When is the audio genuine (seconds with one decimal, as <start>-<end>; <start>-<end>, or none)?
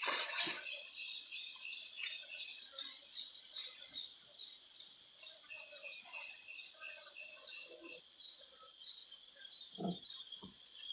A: 4.1-6.0; 9.0-10.3